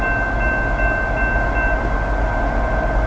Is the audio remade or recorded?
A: recorded